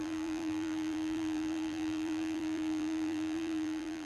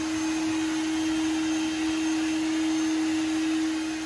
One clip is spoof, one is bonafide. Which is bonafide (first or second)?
second